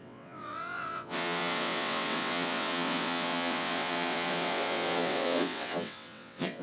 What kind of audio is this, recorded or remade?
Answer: remade